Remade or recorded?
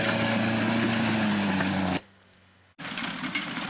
recorded